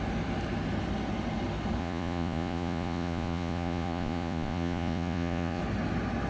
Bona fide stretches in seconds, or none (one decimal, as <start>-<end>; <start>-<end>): 0.0-1.8; 5.6-6.3